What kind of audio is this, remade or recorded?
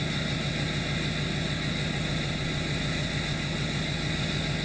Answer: recorded